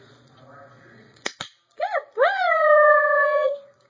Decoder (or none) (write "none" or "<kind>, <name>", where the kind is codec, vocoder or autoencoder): vocoder, Vocos